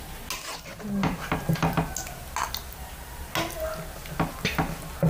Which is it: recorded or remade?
recorded